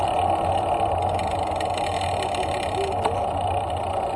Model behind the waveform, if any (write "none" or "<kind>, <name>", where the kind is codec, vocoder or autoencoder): none